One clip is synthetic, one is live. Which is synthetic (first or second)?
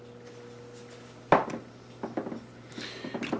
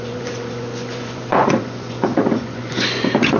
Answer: second